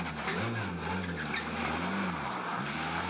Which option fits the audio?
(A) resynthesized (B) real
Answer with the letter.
B